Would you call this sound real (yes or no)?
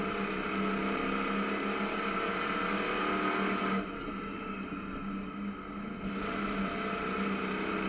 yes